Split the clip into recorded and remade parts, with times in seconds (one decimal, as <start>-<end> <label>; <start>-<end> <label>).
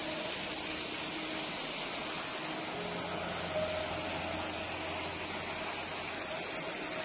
0.0-7.0 recorded